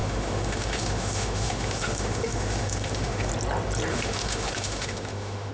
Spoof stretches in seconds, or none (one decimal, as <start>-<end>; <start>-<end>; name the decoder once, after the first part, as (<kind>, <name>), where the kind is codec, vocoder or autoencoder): 0.0-3.3 (autoencoder, DAC-VAE); 3.9-5.5